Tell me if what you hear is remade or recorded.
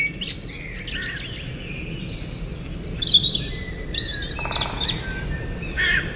recorded